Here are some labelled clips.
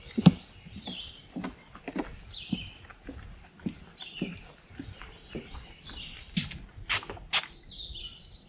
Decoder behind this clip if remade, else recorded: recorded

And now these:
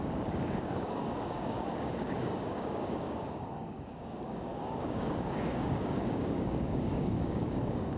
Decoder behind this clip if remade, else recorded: remade, codec, DAC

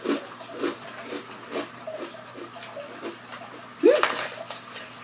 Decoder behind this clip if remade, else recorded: recorded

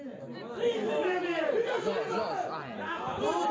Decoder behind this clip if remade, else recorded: recorded